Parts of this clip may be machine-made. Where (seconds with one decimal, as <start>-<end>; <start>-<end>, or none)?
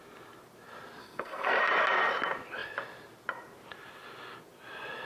1.0-1.6